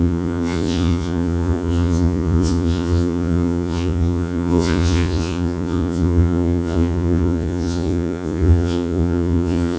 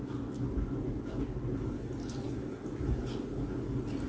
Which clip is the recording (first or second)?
second